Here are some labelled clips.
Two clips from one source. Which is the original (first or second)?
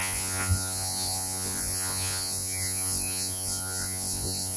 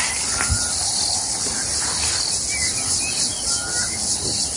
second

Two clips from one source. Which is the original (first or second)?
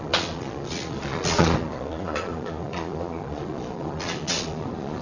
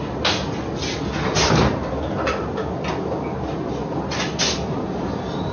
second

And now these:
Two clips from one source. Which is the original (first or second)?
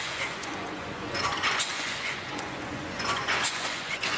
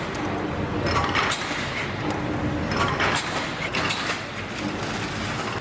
second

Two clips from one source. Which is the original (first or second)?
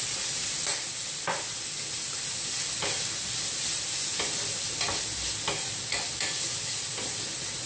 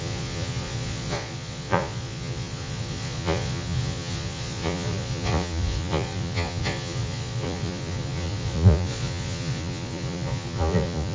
first